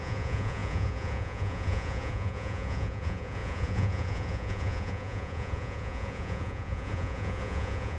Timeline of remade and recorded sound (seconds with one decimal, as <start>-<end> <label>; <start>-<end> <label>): 0.0-8.0 remade

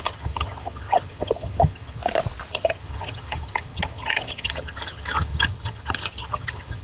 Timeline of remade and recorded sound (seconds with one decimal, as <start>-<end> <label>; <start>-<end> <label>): 0.0-2.0 remade; 2.0-2.5 recorded; 2.5-6.8 remade

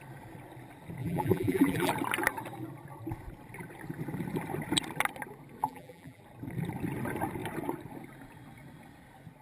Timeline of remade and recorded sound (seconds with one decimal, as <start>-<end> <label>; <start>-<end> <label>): 0.0-1.0 recorded; 1.0-1.9 remade; 1.9-5.6 recorded; 5.6-6.2 remade; 6.2-9.4 recorded

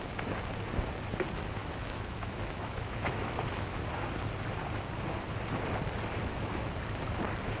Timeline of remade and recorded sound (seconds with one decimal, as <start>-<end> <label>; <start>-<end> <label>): 0.0-1.6 recorded; 1.6-3.8 remade; 3.8-6.2 recorded; 6.2-6.7 remade; 6.7-7.6 recorded

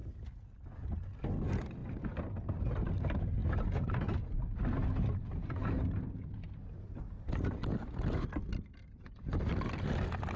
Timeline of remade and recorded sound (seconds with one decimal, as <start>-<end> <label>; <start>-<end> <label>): 0.0-10.4 recorded

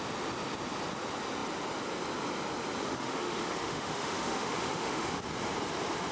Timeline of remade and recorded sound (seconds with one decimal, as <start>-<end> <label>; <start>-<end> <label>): 0.0-2.8 recorded; 2.8-5.2 remade; 5.2-6.1 recorded

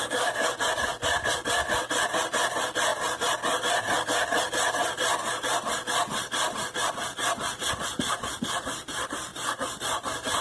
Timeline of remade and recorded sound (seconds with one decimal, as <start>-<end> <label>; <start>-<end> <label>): 0.0-10.4 recorded